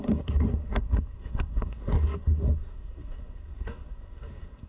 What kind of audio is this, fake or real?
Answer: fake